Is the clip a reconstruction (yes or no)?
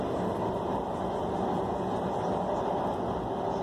no